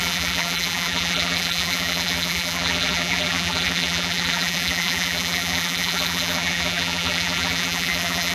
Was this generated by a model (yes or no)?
yes